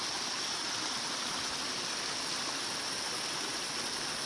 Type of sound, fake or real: real